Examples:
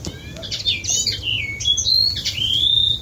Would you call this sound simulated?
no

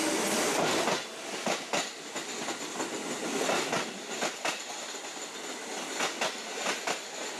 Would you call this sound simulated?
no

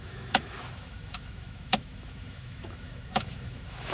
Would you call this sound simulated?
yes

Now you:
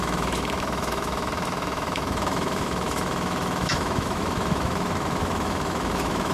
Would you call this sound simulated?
yes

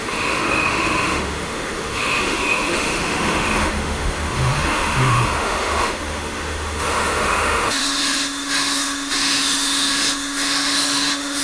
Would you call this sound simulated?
yes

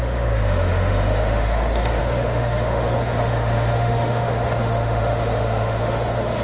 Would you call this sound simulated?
yes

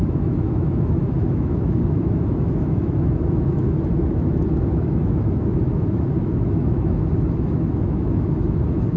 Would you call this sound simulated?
yes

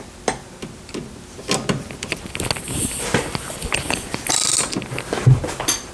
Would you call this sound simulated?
no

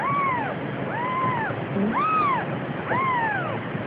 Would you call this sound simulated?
no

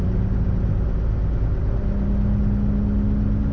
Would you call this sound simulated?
no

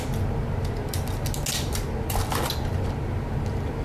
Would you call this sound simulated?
no